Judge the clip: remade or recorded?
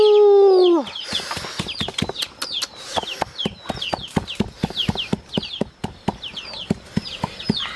recorded